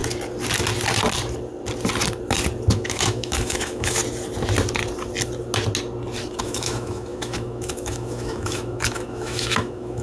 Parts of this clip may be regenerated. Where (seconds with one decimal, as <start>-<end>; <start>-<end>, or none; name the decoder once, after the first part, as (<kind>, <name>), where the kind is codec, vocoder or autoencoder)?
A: 2.7-4.0 (autoencoder, DAC-VAE); 6.4-10.0